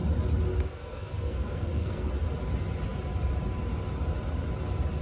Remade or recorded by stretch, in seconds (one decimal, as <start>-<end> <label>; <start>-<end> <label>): 0.0-0.5 recorded; 0.5-2.1 remade; 2.1-5.0 recorded